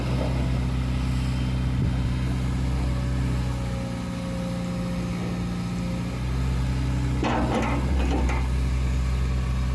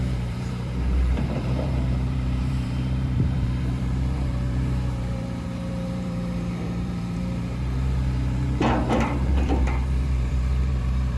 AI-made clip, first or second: second